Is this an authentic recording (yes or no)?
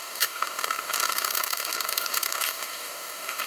no